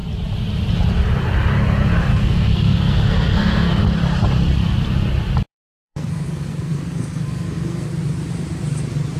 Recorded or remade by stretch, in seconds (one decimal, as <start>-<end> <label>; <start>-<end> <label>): 0.0-2.1 recorded; 2.1-3.8 remade; 3.8-5.5 recorded; 5.5-7.9 remade; 7.9-9.2 recorded